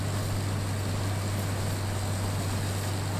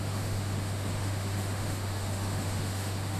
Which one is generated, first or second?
second